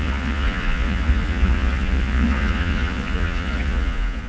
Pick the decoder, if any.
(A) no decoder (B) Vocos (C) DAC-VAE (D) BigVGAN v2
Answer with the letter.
B